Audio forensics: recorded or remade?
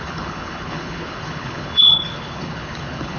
remade